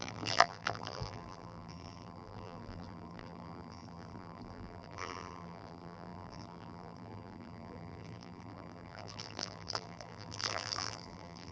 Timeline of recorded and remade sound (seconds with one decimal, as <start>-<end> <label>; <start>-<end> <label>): 0.0-11.5 remade